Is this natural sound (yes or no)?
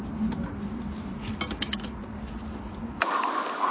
yes